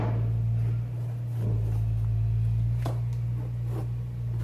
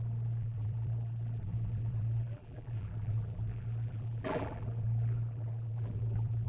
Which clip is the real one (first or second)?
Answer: first